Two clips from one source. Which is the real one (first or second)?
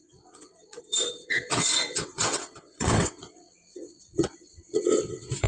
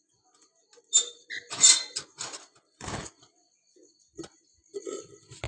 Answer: second